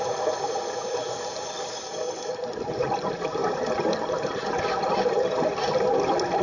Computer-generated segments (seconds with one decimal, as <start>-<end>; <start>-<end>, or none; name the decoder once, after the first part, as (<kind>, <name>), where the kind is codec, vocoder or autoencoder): 0.0-5.5 (vocoder, BigVGAN v2)